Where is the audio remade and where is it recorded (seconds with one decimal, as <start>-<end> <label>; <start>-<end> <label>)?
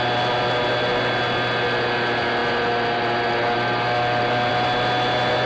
0.0-5.5 recorded